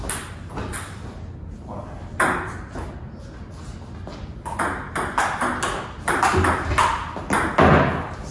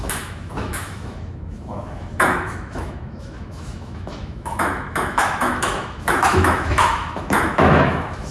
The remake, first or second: second